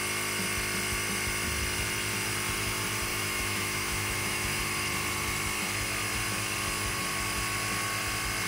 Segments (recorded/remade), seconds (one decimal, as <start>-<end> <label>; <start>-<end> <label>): 0.0-3.1 recorded; 3.1-4.6 remade; 4.6-8.5 recorded